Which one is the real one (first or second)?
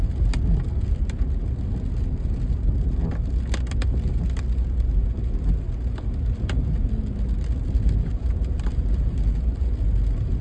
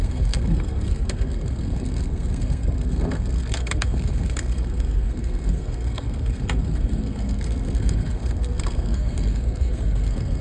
first